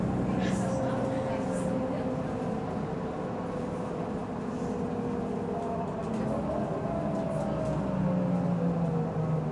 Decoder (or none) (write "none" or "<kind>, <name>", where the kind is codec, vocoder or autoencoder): none